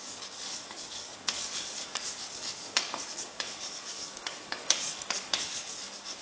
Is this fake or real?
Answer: fake